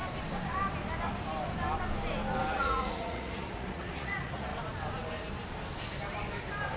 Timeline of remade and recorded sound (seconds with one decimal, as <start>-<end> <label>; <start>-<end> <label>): 0.0-2.5 recorded; 2.5-4.5 remade; 4.5-6.8 recorded